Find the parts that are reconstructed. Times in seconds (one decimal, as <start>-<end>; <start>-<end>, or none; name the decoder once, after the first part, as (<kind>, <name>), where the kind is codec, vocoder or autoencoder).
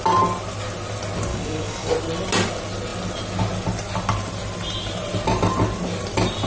1.3-1.9 (codec, DAC)